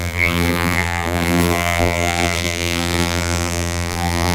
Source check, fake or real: fake